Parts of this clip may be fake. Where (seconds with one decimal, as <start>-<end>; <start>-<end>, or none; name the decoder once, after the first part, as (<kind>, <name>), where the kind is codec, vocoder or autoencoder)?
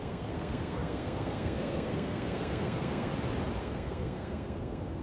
0.0-3.1 (codec, SNAC); 3.6-5.0